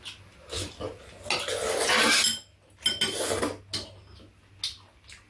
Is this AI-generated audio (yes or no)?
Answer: no